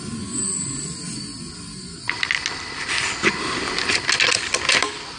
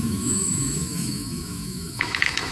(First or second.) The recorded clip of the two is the first